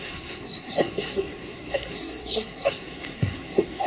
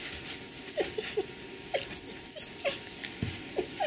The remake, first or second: first